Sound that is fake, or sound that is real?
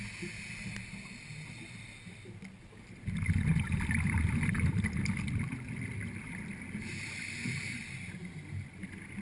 real